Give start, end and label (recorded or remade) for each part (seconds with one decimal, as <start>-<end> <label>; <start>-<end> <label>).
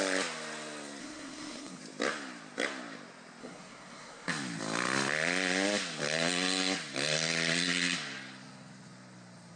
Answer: 0.0-1.0 recorded; 1.0-1.8 remade; 1.8-3.4 recorded; 3.4-4.3 remade; 4.3-9.6 recorded